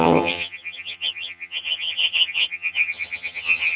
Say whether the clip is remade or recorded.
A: remade